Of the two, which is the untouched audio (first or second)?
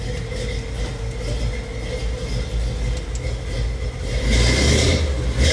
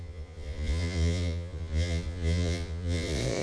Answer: first